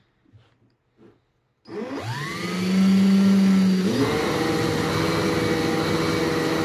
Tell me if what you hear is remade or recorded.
recorded